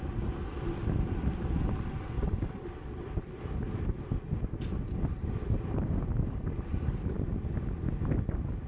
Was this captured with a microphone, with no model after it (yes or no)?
yes